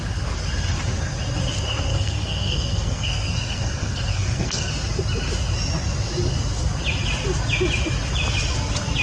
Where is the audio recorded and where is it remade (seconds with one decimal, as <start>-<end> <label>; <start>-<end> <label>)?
0.0-1.9 recorded; 1.9-4.7 remade; 4.7-9.0 recorded